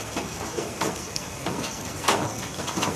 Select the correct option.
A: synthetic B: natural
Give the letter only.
A